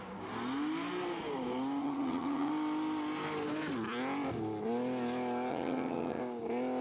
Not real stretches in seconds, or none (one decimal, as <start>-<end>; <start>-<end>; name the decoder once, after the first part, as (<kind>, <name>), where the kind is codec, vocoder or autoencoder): 1.8-2.5 (vocoder, HiFi-GAN); 5.5-6.2